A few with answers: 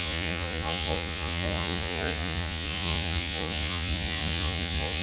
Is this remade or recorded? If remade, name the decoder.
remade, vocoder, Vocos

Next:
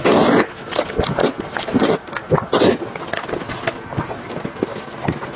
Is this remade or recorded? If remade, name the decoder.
recorded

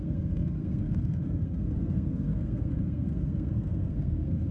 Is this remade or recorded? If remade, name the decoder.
remade, codec, SNAC